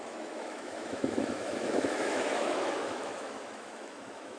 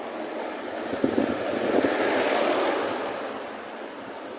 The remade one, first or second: first